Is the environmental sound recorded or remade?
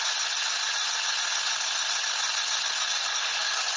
recorded